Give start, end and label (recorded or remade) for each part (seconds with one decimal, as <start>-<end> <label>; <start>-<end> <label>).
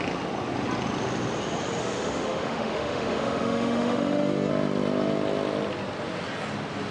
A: 0.0-1.8 recorded; 1.8-4.5 remade; 4.5-6.9 recorded